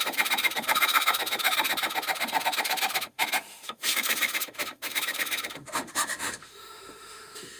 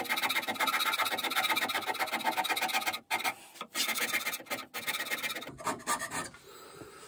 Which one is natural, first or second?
second